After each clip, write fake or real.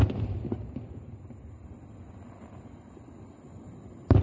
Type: real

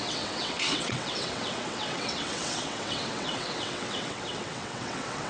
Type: fake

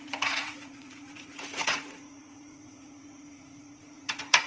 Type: fake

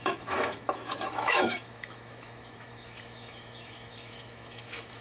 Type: fake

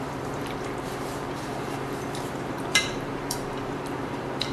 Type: fake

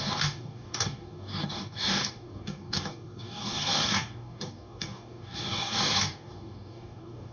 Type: fake